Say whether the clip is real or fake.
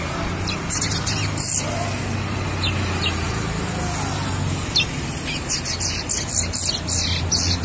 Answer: real